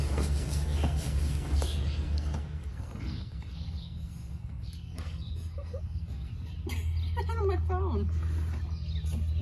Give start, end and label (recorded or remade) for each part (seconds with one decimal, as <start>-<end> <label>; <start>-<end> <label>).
0.0-6.3 remade; 6.3-9.4 recorded